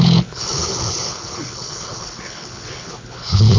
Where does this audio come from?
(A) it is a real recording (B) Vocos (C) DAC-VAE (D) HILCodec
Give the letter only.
D